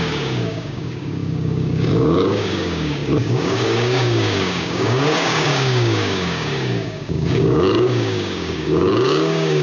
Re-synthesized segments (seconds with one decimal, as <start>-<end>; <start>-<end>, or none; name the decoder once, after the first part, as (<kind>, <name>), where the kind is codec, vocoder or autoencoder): 0.0-9.6 (codec, DAC)